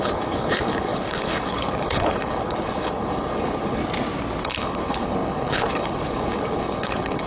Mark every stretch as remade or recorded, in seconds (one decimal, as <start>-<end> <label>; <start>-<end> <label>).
0.0-3.8 remade; 3.8-4.4 recorded; 4.4-7.3 remade